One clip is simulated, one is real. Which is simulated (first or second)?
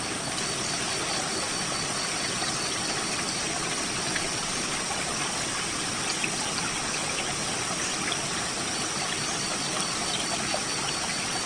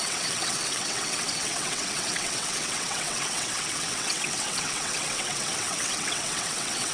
second